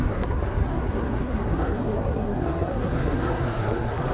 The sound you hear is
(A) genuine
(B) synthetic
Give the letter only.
B